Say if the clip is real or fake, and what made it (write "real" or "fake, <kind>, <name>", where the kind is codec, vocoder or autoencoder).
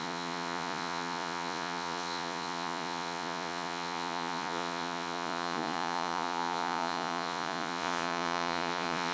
fake, vocoder, Vocos